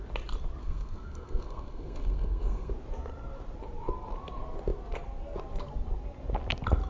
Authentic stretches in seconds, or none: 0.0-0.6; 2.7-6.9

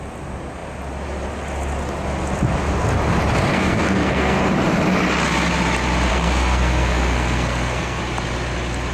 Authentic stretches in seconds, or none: 0.0-3.5; 4.4-6.1; 8.0-8.9